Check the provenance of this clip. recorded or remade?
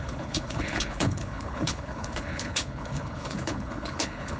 remade